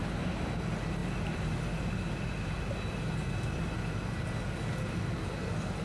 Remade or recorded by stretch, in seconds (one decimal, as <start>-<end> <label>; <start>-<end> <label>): 0.0-5.8 recorded

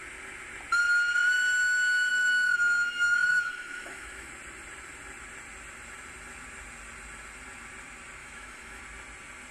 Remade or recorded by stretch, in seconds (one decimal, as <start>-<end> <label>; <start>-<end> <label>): 0.0-2.1 recorded; 2.1-4.3 remade; 4.3-8.2 recorded; 8.2-8.8 remade; 8.8-9.5 recorded

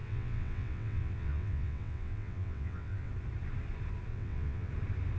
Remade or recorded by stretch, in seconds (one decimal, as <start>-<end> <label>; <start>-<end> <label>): 0.0-3.1 remade; 3.1-4.1 recorded; 4.1-4.7 remade; 4.7-5.2 recorded

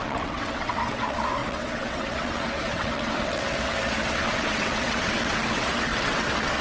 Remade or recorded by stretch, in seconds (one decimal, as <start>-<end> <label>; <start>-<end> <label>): 0.0-6.6 remade

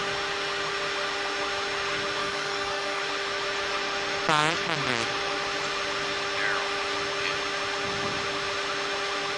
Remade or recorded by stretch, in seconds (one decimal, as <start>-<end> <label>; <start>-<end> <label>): 0.0-2.2 recorded; 2.2-3.0 remade; 3.0-9.4 recorded

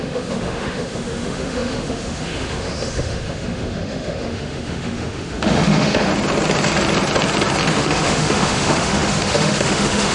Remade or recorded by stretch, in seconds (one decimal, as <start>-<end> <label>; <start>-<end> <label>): 0.0-6.1 remade; 6.1-7.7 recorded; 7.7-10.1 remade